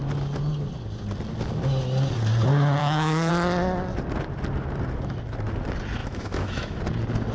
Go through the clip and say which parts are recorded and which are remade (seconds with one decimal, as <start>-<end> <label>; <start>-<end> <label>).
0.0-2.8 recorded; 2.8-3.3 remade; 3.3-6.0 recorded; 6.0-6.8 remade; 6.8-7.3 recorded